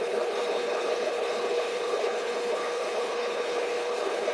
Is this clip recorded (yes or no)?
no